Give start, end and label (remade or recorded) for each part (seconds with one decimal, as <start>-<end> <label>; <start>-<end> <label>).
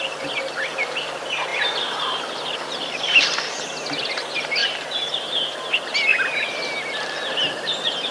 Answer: 0.0-1.5 recorded; 1.5-3.2 remade; 3.2-6.1 recorded; 6.1-8.1 remade